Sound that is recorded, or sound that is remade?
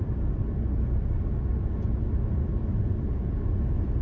recorded